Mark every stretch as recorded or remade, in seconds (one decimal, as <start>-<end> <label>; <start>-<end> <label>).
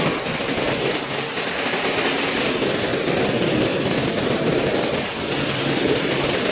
0.0-6.5 recorded